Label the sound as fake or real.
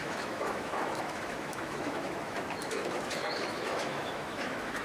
fake